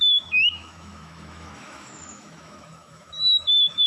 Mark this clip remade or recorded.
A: remade